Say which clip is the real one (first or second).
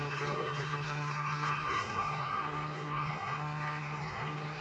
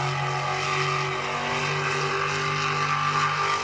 second